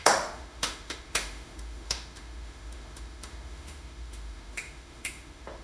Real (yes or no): no